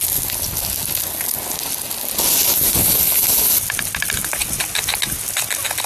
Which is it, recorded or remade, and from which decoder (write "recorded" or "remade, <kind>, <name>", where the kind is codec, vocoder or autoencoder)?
recorded